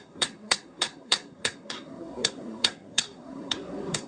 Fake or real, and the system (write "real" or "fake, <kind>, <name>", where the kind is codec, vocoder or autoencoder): fake, codec, SNAC